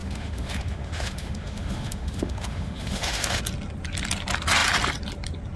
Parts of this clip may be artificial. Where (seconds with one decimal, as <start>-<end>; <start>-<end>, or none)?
0.0-3.4